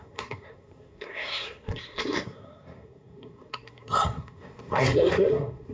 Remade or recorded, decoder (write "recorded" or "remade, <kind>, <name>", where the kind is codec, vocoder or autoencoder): remade, codec, SNAC